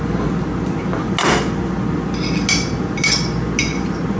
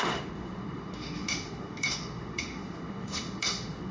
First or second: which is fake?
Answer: second